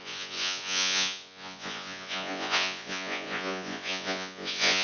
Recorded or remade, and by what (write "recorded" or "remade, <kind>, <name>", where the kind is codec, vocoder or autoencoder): remade, vocoder, Vocos